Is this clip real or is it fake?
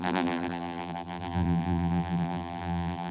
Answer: fake